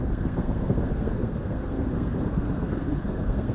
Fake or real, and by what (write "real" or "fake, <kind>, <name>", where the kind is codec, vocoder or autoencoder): fake, codec, SNAC